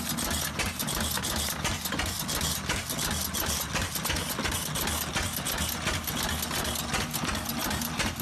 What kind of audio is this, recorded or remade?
recorded